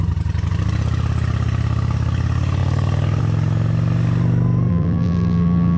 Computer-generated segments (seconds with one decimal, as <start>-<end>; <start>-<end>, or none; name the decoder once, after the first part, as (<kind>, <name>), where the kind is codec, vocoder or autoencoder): 4.7-5.8 (vocoder, BigVGAN v2)